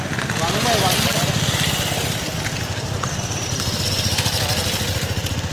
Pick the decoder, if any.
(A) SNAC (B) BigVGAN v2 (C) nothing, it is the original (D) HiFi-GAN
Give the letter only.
C